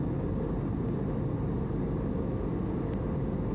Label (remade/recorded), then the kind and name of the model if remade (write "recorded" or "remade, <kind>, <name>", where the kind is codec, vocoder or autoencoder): recorded